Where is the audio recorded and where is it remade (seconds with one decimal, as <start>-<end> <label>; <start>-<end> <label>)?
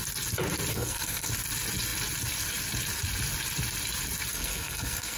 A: 0.0-0.7 recorded; 0.7-1.3 remade; 1.3-4.3 recorded; 4.3-5.2 remade